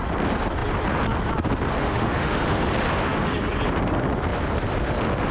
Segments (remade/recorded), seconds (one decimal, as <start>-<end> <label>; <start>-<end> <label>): 0.0-1.8 recorded; 1.8-2.6 remade; 2.6-5.3 recorded